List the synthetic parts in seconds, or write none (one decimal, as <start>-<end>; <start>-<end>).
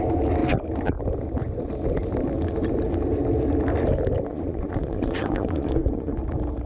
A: 4.3-6.2